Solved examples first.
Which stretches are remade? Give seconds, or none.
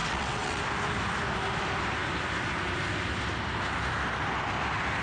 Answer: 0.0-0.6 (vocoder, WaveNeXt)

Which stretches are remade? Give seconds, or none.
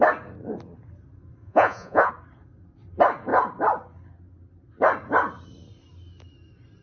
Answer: 1.4-2.1 (vocoder, Vocos)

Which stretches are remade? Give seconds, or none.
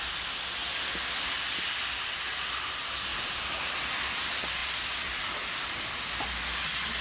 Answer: 3.1-3.7 (vocoder, BigVGAN v2)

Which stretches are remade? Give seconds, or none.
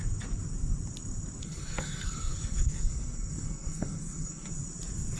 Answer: 1.4-4.5 (codec, SNAC)